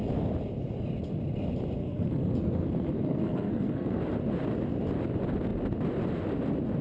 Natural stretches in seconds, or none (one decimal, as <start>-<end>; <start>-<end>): 0.0-1.8; 4.0-6.8